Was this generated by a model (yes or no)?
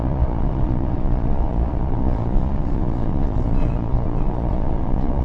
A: yes